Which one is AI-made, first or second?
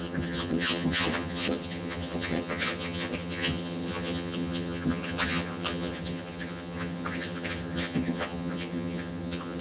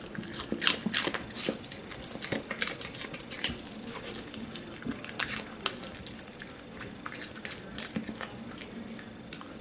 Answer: first